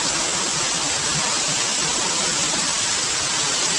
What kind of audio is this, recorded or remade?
recorded